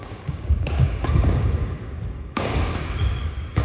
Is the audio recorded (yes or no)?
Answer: no